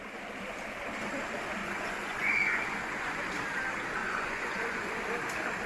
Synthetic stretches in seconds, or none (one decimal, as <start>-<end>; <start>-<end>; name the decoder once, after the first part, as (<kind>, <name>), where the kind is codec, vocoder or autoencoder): 1.6-3.2 (vocoder, Vocos); 4.0-5.0